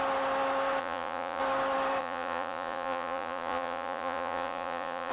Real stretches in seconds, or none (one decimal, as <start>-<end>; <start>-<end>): 0.0-0.8; 1.4-2.0